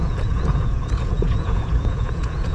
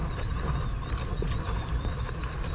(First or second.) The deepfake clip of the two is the first